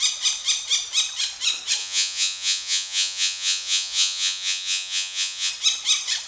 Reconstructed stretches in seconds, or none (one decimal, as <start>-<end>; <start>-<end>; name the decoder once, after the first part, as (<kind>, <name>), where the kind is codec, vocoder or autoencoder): 1.8-5.5 (vocoder, Vocos)